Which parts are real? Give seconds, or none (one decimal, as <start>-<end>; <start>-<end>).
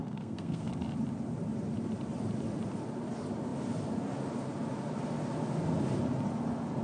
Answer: 0.7-6.8